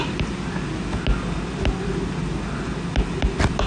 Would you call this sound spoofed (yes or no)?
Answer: no